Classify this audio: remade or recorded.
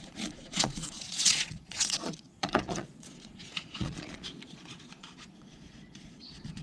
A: remade